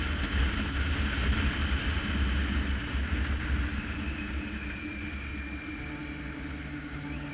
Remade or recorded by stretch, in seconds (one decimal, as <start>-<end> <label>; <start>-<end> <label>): 0.0-7.3 recorded